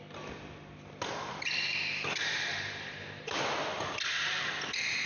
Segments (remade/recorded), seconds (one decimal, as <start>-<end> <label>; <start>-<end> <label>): 0.0-5.1 recorded